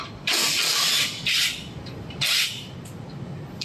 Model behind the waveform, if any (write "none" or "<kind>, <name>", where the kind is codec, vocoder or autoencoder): none